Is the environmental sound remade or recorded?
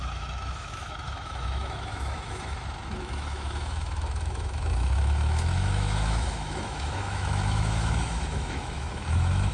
remade